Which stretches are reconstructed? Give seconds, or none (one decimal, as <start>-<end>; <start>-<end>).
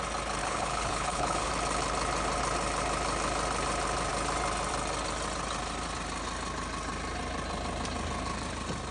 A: 0.4-1.5